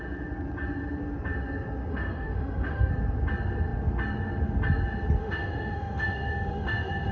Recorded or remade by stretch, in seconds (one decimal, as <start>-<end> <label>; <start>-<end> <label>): 0.0-1.9 recorded; 1.9-2.9 remade; 2.9-5.2 recorded; 5.2-7.1 remade

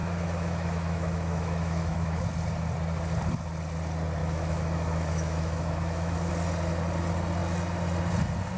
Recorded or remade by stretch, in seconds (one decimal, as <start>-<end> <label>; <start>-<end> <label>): 0.0-2.2 remade; 2.2-4.2 recorded; 4.2-6.3 remade; 6.3-8.6 recorded

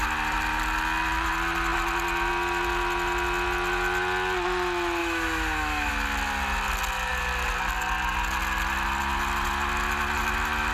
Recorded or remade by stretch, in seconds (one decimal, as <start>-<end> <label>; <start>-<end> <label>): 0.0-5.0 recorded; 5.0-5.9 remade; 5.9-10.7 recorded

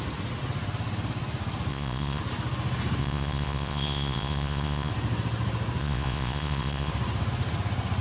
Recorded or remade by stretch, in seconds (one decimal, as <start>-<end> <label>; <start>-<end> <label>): 0.0-1.7 recorded; 1.7-2.2 remade; 2.2-3.0 recorded; 3.0-4.9 remade; 4.9-5.8 recorded; 5.8-6.9 remade; 6.9-8.0 recorded

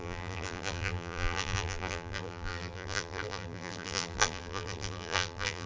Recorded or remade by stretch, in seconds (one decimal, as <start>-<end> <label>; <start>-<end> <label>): 0.0-5.7 remade

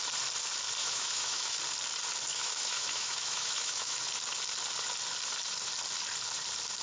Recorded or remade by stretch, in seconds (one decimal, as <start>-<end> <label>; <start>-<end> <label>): 0.0-0.8 recorded; 0.8-1.6 remade; 1.6-2.3 recorded; 2.3-4.0 remade; 4.0-6.8 recorded

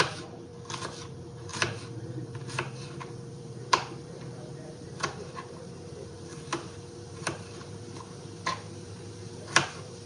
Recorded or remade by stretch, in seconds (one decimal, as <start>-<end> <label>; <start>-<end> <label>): 0.0-0.5 remade; 0.5-1.0 recorded; 1.0-10.1 remade

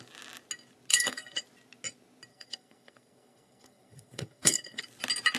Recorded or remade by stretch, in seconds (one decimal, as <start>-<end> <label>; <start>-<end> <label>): 0.0-0.9 recorded; 0.9-1.4 remade; 1.4-2.3 recorded; 2.3-4.8 remade; 4.8-5.4 recorded